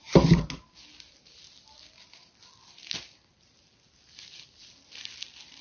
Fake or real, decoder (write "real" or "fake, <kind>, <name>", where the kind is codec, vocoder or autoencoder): real